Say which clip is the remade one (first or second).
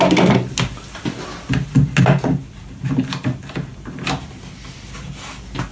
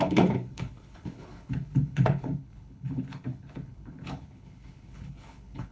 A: second